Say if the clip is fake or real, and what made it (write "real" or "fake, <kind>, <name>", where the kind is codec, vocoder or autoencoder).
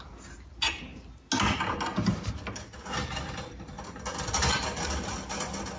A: real